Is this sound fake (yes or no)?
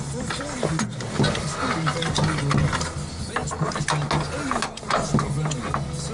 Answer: no